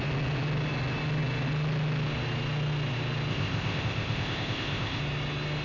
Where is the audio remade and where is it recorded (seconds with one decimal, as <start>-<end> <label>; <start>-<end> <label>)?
0.0-3.3 recorded; 3.3-5.0 remade; 5.0-5.6 recorded